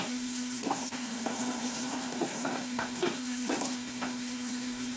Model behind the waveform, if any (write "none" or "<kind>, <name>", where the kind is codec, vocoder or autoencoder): codec, SNAC